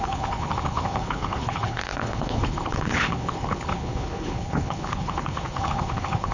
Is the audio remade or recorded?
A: remade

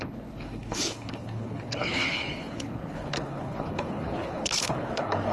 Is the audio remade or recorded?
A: remade